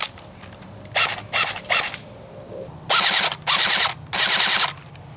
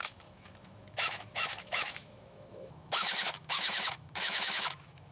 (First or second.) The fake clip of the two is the second